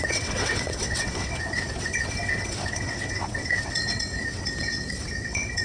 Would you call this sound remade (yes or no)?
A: yes